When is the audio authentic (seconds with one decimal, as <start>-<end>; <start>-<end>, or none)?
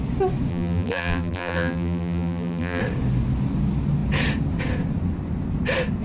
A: 0.0-0.5; 2.8-6.0